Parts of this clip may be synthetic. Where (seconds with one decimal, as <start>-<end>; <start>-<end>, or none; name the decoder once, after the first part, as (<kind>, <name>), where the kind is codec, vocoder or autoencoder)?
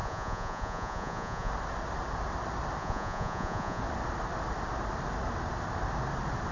0.0-1.5 (vocoder, Vocos); 2.8-3.8